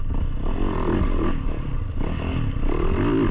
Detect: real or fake real